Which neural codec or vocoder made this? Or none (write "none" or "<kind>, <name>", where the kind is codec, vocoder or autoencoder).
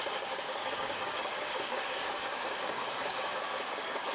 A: codec, DAC